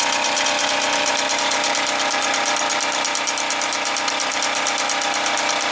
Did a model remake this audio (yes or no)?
yes